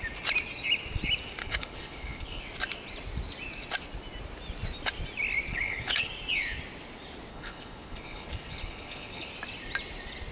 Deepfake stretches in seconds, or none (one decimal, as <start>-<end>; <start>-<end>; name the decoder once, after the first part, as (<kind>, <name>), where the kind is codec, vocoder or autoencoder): 1.4-2.4 (codec, HILCodec); 5.5-6.1; 7.3-9.3